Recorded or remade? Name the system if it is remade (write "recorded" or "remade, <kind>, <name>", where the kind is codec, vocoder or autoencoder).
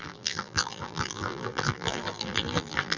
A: remade, vocoder, BigVGAN v2